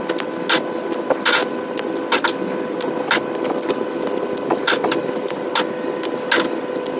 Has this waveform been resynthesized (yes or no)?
no